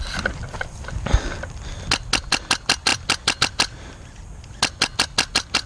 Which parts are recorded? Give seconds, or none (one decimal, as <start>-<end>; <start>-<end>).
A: 0.0-5.7